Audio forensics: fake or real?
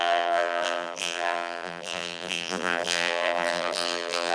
fake